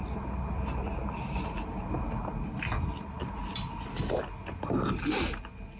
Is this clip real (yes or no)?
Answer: yes